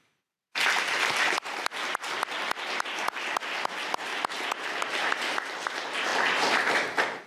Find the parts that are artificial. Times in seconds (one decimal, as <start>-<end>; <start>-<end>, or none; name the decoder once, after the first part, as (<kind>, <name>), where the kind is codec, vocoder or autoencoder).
none